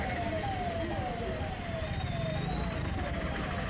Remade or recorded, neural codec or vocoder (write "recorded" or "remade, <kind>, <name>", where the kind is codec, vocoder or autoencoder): recorded